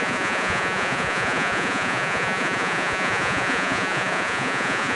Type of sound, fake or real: fake